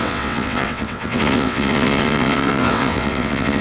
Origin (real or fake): fake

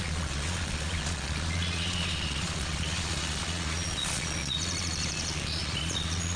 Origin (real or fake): fake